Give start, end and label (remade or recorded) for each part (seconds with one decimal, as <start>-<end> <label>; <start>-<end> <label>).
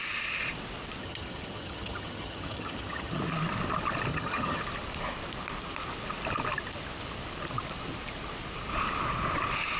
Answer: 0.0-1.0 recorded; 1.0-3.2 remade; 3.2-4.1 recorded; 4.1-4.6 remade; 4.6-9.8 recorded